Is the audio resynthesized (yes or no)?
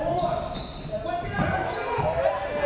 no